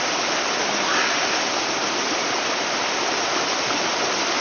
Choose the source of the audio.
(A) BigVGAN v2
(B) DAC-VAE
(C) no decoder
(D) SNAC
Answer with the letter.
C